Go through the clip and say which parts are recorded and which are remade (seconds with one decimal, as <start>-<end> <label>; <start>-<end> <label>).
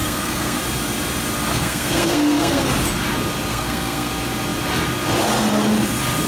0.0-0.6 remade; 0.6-1.5 recorded; 1.5-2.7 remade; 2.7-3.5 recorded; 3.5-4.1 remade; 4.1-6.3 recorded